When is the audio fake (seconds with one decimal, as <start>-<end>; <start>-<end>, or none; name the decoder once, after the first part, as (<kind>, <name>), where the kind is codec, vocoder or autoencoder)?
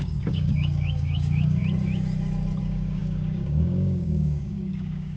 0.0-1.6 (codec, DAC); 2.6-5.2